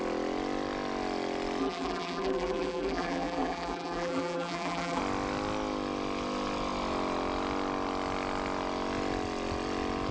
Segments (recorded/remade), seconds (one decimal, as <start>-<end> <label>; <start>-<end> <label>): 0.0-1.6 recorded; 1.6-5.0 remade; 5.0-10.1 recorded